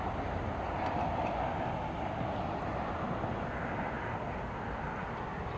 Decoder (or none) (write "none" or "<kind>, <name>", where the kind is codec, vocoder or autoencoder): none